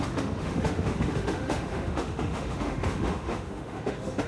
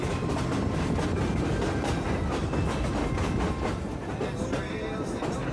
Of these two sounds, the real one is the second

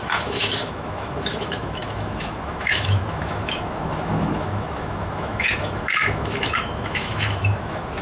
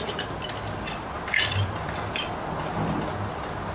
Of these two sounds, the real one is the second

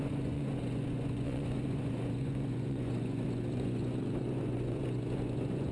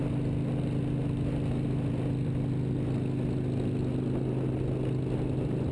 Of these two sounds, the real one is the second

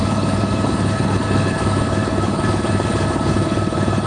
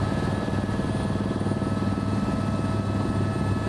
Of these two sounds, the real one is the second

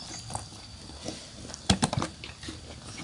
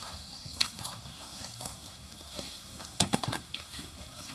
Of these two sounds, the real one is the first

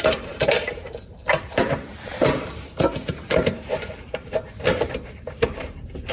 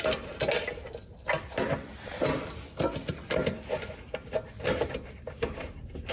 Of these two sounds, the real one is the second